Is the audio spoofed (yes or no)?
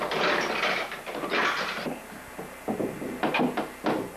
no